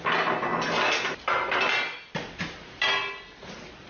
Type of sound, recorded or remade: recorded